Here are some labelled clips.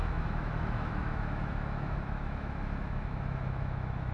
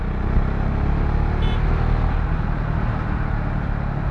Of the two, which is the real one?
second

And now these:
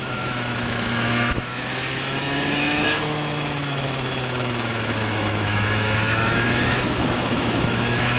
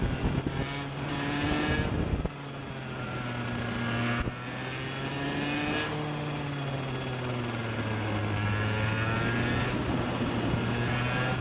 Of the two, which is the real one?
second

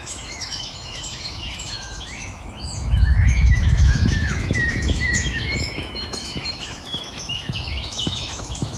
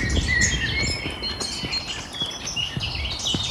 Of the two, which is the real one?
second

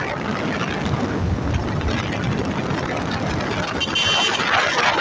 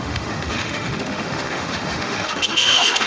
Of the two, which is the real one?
first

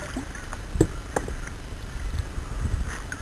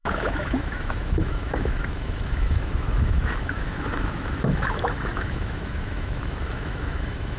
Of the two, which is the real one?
first